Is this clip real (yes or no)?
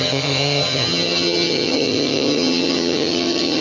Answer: no